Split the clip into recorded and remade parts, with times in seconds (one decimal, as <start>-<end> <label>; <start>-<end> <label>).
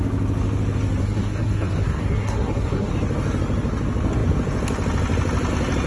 0.0-1.0 recorded; 1.0-2.9 remade; 2.9-5.9 recorded